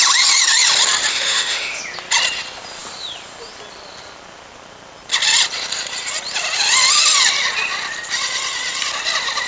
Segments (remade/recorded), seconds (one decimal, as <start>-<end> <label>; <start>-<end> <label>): 0.0-1.1 recorded; 1.1-1.8 remade; 1.8-9.5 recorded